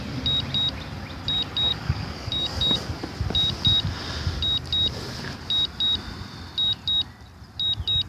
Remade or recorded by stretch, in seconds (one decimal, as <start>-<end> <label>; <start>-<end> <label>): 0.0-1.7 recorded; 1.7-2.8 remade; 2.8-8.1 recorded